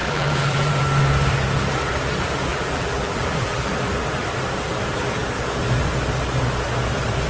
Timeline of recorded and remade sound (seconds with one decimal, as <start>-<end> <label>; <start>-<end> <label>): 0.0-0.8 remade; 0.8-2.5 recorded; 2.5-3.7 remade; 3.7-7.3 recorded